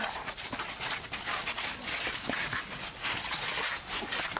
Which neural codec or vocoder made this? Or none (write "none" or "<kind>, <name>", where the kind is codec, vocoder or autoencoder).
none